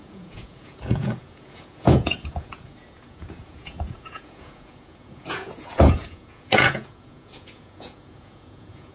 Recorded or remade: remade